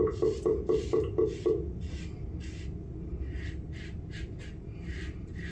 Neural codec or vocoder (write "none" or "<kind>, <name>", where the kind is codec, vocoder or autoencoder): none